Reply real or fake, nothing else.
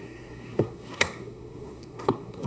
fake